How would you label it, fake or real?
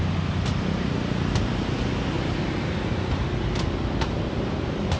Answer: real